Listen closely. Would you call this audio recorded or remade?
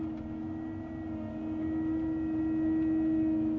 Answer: recorded